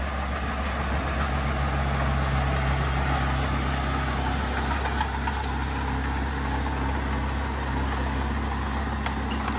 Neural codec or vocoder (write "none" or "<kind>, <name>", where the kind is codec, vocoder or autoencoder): none